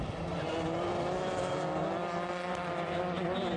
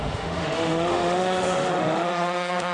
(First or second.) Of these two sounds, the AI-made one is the second